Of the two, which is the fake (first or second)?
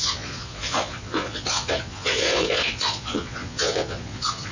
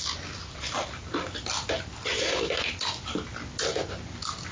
first